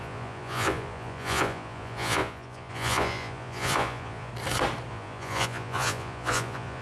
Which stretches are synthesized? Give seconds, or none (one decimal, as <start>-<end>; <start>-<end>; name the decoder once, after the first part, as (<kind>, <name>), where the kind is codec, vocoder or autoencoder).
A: 0.0-4.3 (vocoder, Vocos); 4.9-6.8